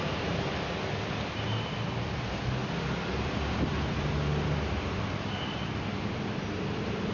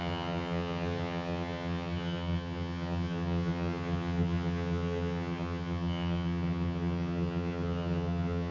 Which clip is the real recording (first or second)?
first